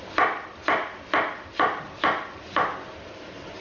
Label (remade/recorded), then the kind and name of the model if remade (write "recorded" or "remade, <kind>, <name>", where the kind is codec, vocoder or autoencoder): recorded